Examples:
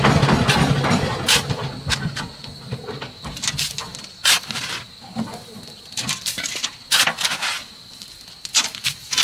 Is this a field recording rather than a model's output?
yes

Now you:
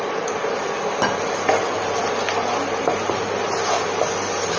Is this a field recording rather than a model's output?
yes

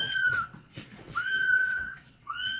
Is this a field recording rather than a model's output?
no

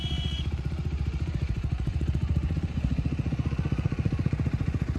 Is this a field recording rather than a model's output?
no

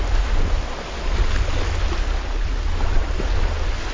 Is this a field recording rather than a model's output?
yes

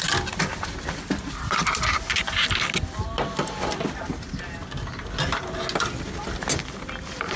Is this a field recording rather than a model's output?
yes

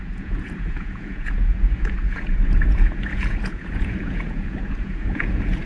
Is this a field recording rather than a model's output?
no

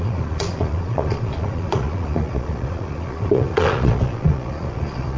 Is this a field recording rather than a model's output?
no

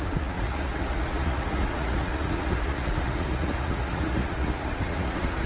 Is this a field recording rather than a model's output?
no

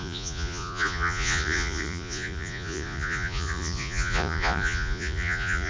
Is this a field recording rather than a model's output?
no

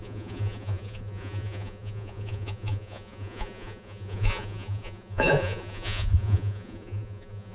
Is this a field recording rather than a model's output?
no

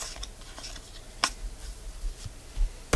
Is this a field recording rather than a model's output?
yes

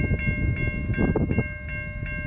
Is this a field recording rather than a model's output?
yes